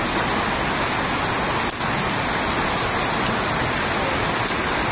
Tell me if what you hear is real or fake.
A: real